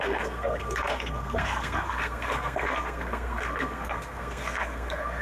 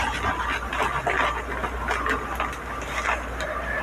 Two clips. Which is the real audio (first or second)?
second